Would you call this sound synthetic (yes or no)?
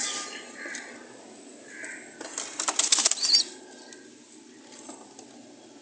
no